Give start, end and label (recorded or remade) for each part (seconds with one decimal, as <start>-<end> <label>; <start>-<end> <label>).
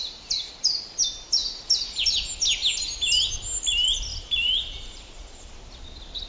0.0-1.4 recorded; 1.4-2.0 remade; 2.0-4.1 recorded; 4.1-5.5 remade; 5.5-6.3 recorded